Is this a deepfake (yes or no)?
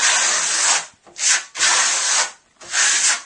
no